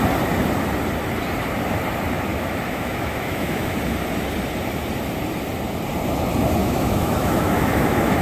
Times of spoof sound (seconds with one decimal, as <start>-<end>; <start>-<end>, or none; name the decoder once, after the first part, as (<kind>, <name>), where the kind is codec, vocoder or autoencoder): 2.3-3.8 (autoencoder, DAC-VAE); 6.6-8.2